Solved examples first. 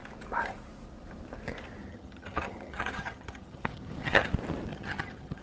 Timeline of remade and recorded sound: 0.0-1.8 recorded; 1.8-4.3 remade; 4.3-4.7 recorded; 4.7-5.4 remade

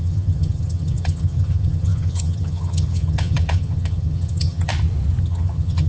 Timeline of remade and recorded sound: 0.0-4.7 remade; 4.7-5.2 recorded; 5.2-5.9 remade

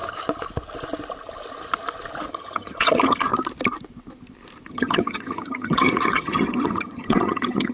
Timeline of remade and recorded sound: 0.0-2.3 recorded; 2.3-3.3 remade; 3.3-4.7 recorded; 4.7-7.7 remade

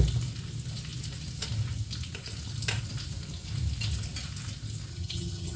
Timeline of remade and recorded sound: 0.0-4.9 recorded; 4.9-5.6 remade